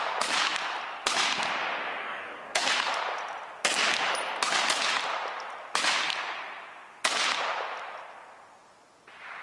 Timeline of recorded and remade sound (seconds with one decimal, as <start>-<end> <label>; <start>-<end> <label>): 0.0-2.0 recorded; 2.0-2.7 remade; 2.7-9.4 recorded